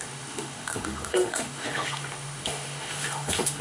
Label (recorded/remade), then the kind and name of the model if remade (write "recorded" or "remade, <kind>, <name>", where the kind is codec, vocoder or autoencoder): remade, autoencoder, DAC-VAE